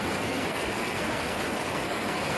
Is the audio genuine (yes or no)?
no